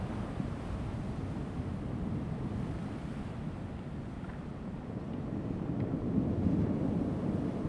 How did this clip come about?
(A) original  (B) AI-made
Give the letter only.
A